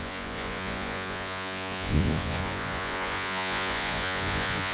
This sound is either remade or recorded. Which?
remade